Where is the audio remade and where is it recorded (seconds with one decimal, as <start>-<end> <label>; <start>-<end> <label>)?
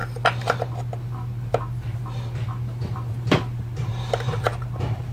0.0-3.1 recorded; 3.1-5.1 remade